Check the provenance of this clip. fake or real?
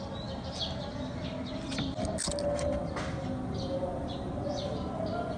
real